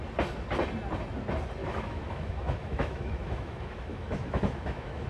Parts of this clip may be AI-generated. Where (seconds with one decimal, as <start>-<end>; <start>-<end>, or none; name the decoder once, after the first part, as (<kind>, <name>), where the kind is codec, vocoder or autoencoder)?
1.6-5.1 (autoencoder, DAC-VAE)

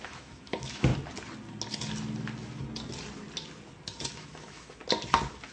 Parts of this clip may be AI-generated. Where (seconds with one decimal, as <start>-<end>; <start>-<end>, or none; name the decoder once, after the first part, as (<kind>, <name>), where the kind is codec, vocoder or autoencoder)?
0.0-0.9 (autoencoder, DAC-VAE); 4.1-4.8